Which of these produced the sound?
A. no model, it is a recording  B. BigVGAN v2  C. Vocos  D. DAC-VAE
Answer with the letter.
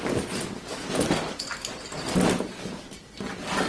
A